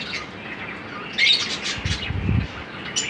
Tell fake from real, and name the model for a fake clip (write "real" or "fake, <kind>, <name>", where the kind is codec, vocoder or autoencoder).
real